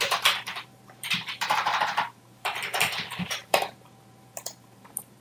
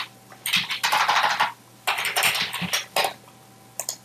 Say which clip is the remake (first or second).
first